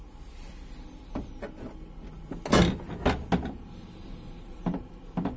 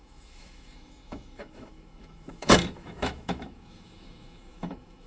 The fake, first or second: second